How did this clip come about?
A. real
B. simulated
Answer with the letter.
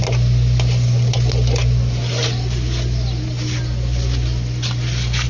A